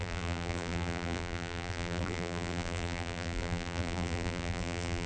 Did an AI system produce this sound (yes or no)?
yes